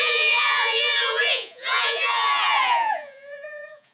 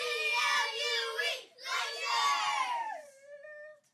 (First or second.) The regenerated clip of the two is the first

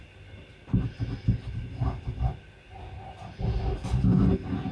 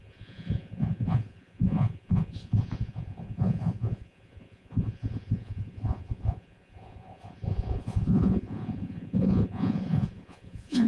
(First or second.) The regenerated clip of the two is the second